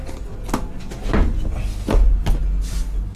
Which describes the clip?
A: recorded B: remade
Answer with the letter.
A